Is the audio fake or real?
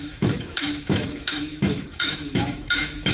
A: fake